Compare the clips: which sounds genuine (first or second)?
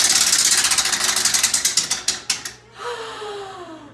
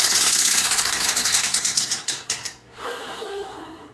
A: first